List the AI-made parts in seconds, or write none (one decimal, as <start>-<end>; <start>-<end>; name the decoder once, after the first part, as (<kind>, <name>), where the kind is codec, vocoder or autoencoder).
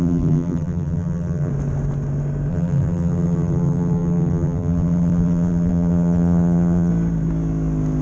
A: 0.0-1.5 (vocoder, BigVGAN v2); 2.5-6.9